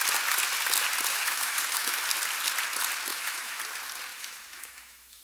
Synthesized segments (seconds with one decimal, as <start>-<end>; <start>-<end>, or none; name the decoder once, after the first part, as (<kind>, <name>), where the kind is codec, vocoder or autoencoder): 1.1-2.0 (autoencoder, DAC-VAE); 3.1-3.6; 4.1-5.2